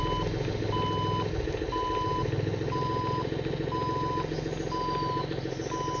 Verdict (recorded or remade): recorded